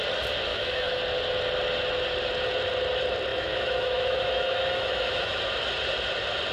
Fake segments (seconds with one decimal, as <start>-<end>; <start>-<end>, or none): 0.5-1.0; 3.3-5.4

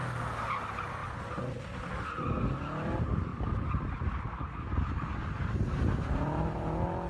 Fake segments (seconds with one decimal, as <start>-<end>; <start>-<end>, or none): none

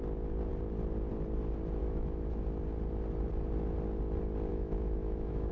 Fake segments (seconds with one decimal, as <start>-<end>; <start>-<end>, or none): 1.8-2.3; 4.5-5.5

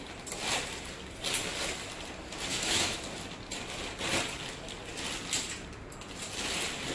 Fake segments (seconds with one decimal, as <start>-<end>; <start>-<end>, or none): 2.5-3.0

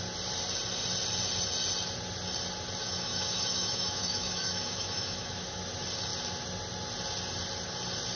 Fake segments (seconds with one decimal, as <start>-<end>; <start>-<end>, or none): 2.8-5.6

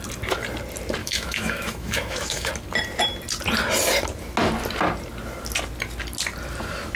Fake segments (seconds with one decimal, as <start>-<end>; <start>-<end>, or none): 1.0-2.5

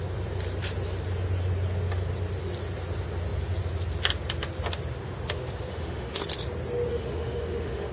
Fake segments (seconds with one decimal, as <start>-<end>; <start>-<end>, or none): 5.7-6.2; 6.9-7.9

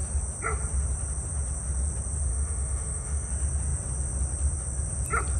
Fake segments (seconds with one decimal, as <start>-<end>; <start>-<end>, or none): 2.3-3.3